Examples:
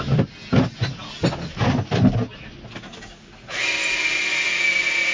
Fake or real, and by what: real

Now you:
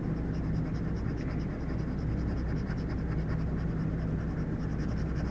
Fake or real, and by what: real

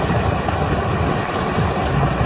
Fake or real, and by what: real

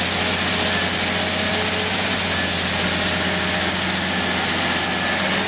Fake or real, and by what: real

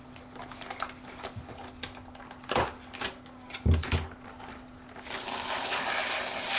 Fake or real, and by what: real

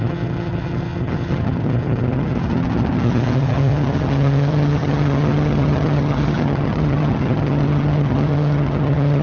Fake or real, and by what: fake, vocoder, HiFi-GAN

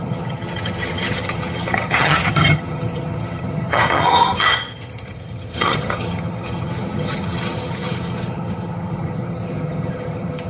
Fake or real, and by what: fake, vocoder, HiFi-GAN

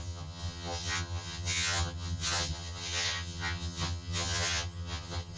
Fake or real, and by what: fake, vocoder, HiFi-GAN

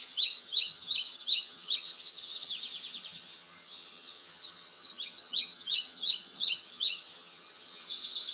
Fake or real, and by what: fake, vocoder, HiFi-GAN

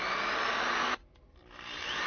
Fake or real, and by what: real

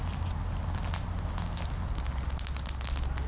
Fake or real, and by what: real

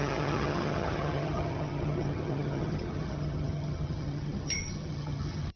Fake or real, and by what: fake, vocoder, HiFi-GAN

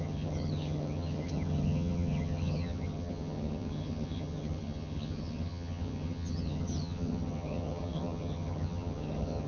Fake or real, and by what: fake, vocoder, HiFi-GAN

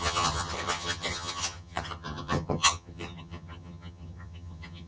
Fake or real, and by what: fake, vocoder, HiFi-GAN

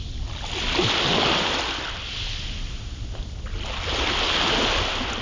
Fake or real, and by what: real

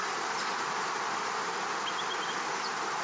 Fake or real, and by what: real